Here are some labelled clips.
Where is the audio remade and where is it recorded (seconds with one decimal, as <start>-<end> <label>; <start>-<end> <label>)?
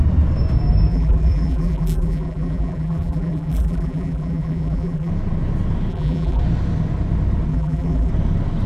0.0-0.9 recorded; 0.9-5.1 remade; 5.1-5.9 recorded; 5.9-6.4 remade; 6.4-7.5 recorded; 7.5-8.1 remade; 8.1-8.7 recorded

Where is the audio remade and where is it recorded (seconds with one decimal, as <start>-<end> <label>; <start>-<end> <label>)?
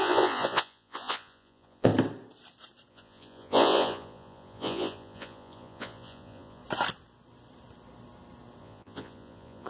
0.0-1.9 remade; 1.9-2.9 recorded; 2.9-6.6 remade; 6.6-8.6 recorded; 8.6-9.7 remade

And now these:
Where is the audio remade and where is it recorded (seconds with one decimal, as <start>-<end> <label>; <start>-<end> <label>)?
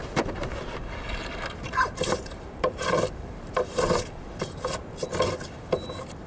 0.0-3.8 remade; 3.8-6.3 recorded